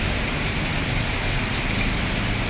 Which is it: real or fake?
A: real